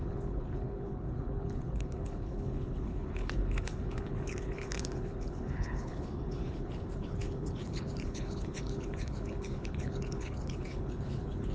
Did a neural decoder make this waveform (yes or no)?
yes